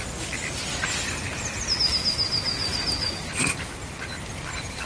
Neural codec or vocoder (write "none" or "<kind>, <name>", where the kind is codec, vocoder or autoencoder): none